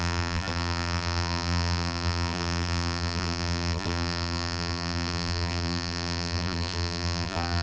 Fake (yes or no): yes